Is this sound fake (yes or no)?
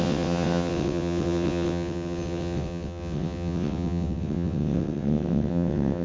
yes